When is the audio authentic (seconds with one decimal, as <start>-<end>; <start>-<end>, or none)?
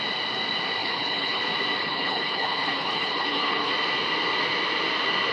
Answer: 0.0-0.8; 1.4-1.8; 3.7-5.3